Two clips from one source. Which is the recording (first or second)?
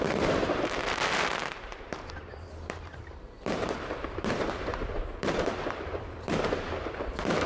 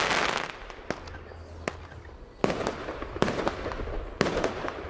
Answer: second